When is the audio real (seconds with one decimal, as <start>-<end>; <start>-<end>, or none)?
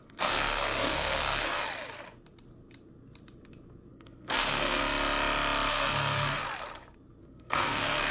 1.6-3.9; 4.8-5.7; 6.4-7.2